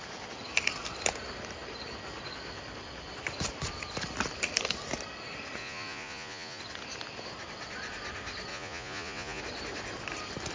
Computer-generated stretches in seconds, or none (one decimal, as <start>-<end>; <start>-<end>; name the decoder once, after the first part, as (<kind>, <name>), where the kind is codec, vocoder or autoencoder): 5.6-6.6 (vocoder, Vocos); 8.5-9.4